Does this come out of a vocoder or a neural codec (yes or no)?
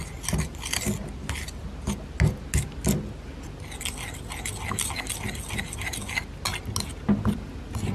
no